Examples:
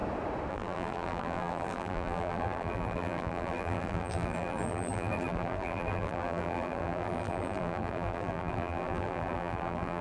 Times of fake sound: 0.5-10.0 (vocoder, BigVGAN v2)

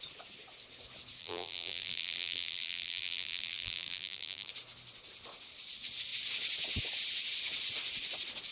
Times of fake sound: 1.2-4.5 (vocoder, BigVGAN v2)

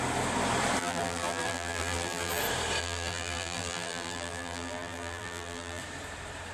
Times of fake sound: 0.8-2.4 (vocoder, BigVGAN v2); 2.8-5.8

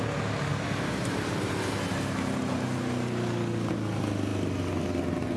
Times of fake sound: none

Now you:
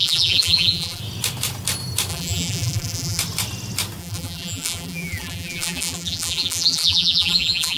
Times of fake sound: 0.0-1.0 (vocoder, BigVGAN v2); 2.1-3.2; 4.0-7.8